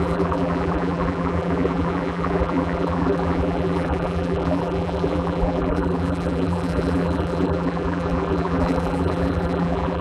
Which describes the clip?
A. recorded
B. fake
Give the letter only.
B